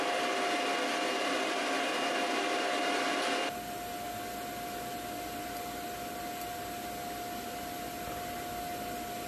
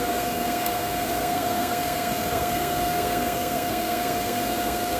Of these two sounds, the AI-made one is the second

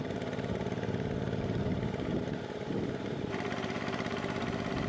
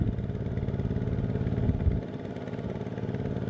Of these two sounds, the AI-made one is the first